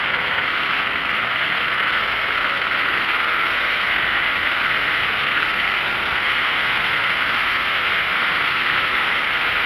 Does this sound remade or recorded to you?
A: remade